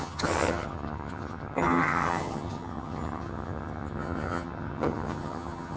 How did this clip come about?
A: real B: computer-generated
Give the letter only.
B